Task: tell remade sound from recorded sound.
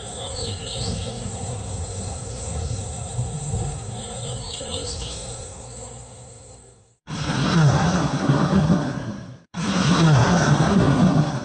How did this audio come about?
remade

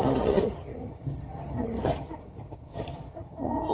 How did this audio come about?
remade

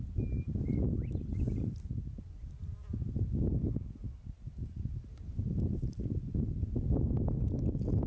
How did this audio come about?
recorded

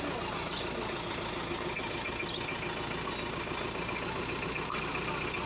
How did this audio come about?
recorded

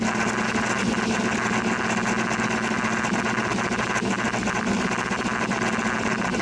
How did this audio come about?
recorded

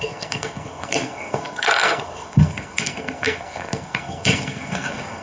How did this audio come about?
remade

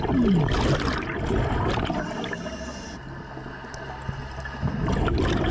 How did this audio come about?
recorded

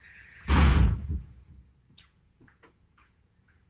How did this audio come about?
remade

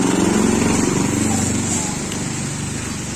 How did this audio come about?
recorded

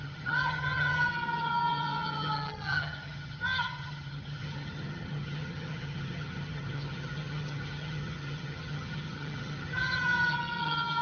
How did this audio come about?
remade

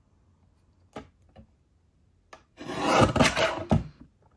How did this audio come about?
recorded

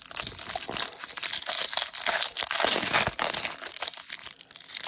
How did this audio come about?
recorded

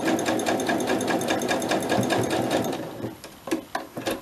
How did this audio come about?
recorded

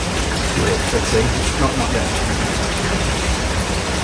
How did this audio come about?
recorded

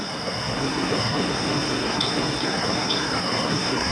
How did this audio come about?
remade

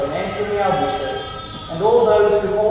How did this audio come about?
recorded